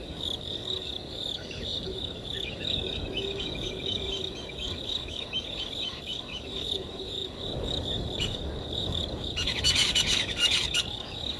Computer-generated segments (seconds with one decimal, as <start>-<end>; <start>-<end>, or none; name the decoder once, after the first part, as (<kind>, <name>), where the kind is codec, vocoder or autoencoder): 0.0-11.4 (codec, DAC)